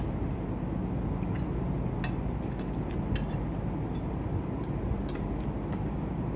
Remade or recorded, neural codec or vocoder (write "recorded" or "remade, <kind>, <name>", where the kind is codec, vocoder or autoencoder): recorded